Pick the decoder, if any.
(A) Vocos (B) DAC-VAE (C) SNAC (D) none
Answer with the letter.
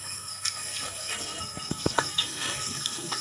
C